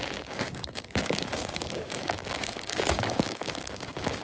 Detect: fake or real fake